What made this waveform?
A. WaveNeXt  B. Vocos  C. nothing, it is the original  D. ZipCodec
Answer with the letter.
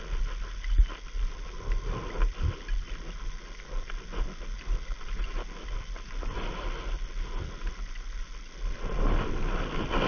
C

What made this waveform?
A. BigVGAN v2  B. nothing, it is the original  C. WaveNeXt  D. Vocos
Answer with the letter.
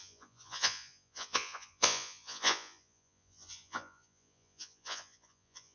D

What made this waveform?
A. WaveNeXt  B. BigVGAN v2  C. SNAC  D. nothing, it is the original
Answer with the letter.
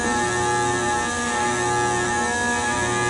D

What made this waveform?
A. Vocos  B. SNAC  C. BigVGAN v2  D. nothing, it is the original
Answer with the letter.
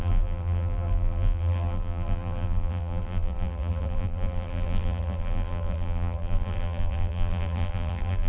C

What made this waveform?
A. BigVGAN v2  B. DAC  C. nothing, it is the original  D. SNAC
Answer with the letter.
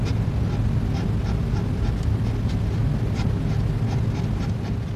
C